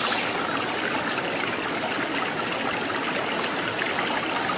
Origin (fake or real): real